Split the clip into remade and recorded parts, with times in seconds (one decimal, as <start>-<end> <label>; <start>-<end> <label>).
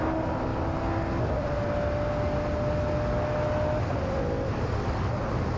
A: 0.0-5.6 recorded